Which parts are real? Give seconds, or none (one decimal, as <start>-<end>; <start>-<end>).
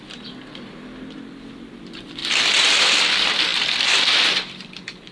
2.2-3.0